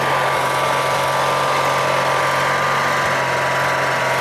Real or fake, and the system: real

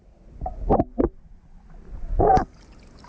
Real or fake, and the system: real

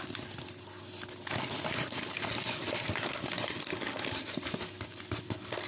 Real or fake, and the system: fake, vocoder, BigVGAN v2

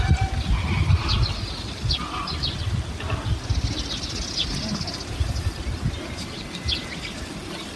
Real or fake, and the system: real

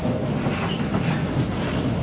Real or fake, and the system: real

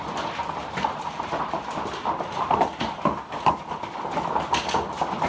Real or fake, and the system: real